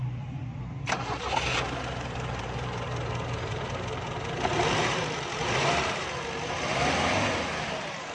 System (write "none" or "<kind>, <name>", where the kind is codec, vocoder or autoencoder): vocoder, BigVGAN v2